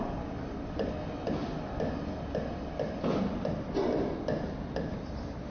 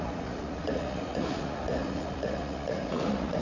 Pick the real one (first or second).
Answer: first